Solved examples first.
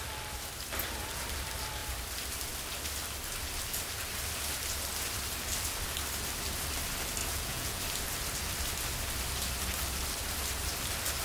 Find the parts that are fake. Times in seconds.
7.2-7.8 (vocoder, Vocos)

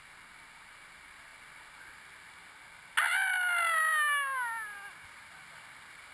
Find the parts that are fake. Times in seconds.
none

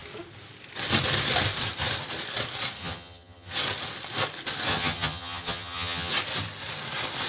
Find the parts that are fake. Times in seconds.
2.8-3.5 (vocoder, HiFi-GAN); 4.7-6.1

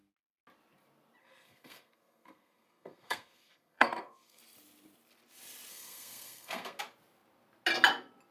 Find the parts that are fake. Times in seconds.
1.2-4.4 (codec, SNAC); 5.7-6.8

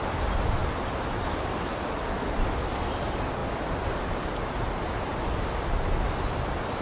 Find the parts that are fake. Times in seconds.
none

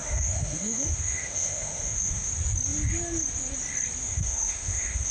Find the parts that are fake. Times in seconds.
0.0-2.3 (autoencoder, DAC-VAE); 4.0-5.1